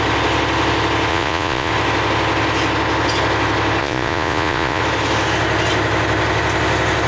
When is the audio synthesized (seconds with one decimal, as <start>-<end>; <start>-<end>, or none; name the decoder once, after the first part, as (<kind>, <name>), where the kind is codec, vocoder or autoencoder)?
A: 1.1-1.7 (vocoder, Vocos); 3.8-4.8